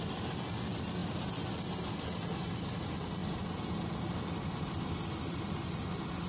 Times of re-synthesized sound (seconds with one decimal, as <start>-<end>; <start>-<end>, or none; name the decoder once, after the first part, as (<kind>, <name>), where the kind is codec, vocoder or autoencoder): none